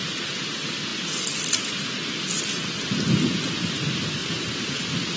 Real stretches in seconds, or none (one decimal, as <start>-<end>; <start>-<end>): 0.0-4.2